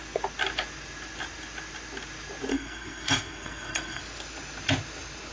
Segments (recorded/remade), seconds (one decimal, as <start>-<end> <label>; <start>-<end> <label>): 0.0-2.5 recorded; 2.5-4.0 remade; 4.0-5.3 recorded